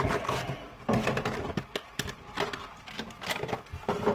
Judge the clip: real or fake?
real